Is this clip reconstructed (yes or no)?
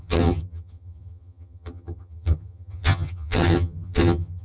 yes